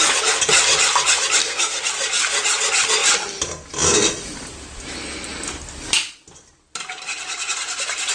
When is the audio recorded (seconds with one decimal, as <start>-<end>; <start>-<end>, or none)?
0.0-1.4; 1.9-8.1